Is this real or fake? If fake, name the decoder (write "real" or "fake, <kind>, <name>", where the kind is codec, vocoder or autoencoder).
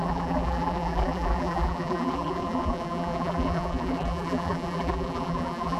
fake, vocoder, BigVGAN v2